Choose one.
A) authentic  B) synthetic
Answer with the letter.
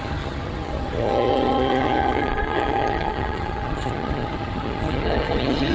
B